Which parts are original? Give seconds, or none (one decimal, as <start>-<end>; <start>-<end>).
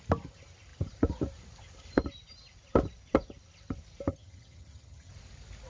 0.0-4.1; 5.1-5.7